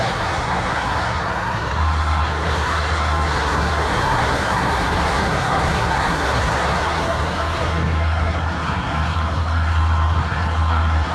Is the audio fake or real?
fake